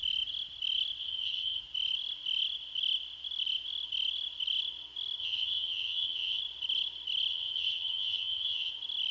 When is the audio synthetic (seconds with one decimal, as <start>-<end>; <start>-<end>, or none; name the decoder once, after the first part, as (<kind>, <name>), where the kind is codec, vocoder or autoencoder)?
1.0-1.6 (vocoder, HiFi-GAN); 5.2-6.4; 7.3-8.7

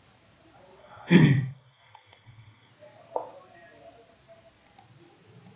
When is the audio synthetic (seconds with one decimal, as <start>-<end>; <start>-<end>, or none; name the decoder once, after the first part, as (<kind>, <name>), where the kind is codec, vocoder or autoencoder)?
0.8-2.7 (codec, SNAC)